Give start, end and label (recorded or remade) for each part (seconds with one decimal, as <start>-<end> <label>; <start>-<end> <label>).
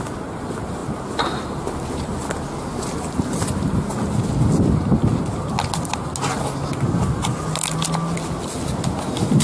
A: 0.0-9.4 recorded